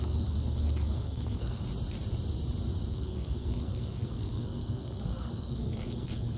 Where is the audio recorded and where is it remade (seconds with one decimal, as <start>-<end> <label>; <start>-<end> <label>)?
0.0-1.6 remade; 1.6-2.9 recorded; 2.9-6.4 remade